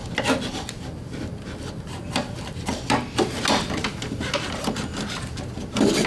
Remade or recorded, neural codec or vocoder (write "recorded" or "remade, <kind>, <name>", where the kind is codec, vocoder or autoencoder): recorded